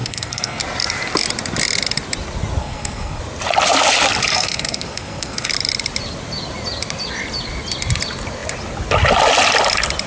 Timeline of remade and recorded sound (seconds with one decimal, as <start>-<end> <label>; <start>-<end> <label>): 0.0-0.6 remade; 0.6-2.6 recorded; 2.6-3.2 remade; 3.2-4.3 recorded; 4.3-5.5 remade; 5.5-10.1 recorded